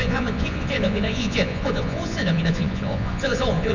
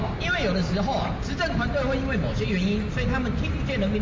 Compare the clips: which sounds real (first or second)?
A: second